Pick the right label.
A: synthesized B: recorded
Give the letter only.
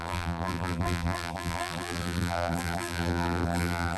A